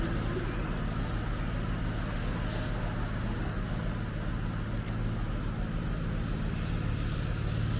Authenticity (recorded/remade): recorded